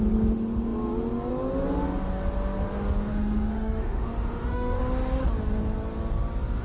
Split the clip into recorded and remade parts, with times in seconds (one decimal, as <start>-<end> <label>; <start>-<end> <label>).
0.0-3.1 recorded; 3.1-4.8 remade; 4.8-6.6 recorded